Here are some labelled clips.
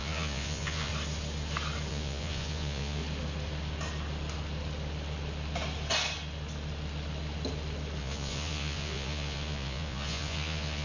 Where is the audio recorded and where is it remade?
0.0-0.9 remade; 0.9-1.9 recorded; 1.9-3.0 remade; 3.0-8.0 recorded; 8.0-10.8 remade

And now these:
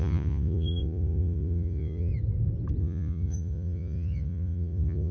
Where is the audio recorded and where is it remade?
0.0-2.1 remade; 2.1-2.8 recorded; 2.8-5.1 remade

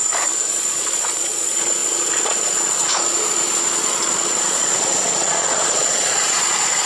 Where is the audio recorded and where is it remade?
0.0-0.5 recorded; 0.5-6.9 remade

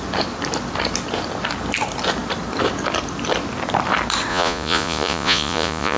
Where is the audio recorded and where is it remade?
0.0-4.3 recorded; 4.3-6.0 remade